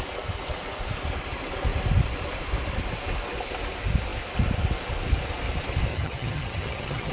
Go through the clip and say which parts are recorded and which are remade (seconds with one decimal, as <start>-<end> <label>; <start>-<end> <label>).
0.0-5.9 recorded; 5.9-7.1 remade